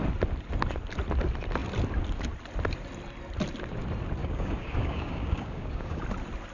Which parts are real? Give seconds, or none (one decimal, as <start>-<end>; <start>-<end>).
0.0-4.2; 6.0-6.5